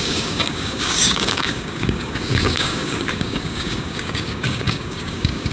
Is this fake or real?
fake